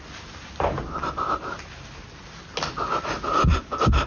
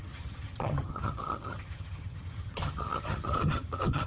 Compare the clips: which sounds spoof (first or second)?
second